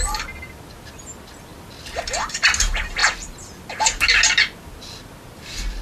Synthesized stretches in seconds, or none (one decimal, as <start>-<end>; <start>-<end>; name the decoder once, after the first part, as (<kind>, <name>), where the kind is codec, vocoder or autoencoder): none